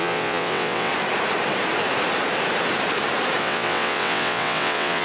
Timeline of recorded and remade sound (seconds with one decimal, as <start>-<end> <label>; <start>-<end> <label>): 0.0-0.9 remade; 0.9-3.4 recorded; 3.4-5.0 remade